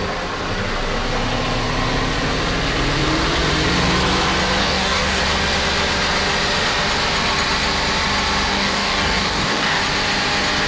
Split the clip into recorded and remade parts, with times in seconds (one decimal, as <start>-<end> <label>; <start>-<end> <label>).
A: 0.0-4.6 recorded; 4.6-5.2 remade; 5.2-8.5 recorded; 8.5-9.8 remade; 9.8-10.7 recorded